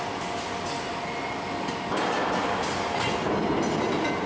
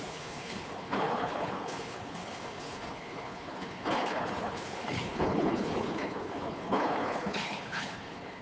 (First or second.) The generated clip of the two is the second